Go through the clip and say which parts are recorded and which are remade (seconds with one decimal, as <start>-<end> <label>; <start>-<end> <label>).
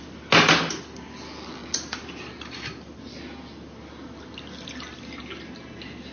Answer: 0.0-1.6 recorded; 1.6-2.2 remade; 2.2-6.1 recorded